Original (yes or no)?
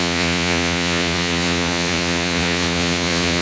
no